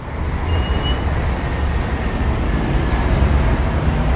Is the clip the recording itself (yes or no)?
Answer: yes